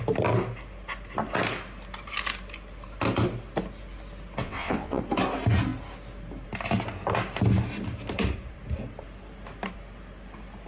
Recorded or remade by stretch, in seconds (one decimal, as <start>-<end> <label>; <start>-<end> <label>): 0.0-4.4 recorded; 4.4-5.0 remade; 5.0-10.7 recorded